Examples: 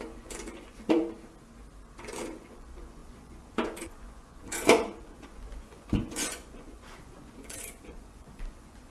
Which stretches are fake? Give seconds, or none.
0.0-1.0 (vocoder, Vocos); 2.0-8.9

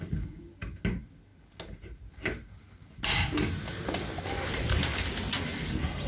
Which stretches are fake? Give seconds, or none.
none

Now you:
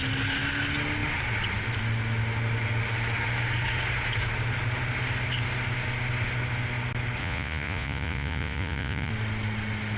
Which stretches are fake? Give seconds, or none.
7.2-9.1 (vocoder, Vocos)

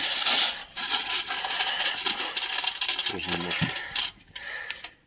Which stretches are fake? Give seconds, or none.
0.6-2.2 (vocoder, Vocos)